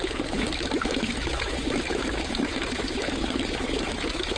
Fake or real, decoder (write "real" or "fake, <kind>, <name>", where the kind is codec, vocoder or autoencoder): fake, autoencoder, DAC-VAE